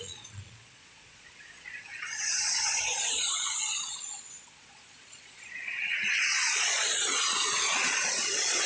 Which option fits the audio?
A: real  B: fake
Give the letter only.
B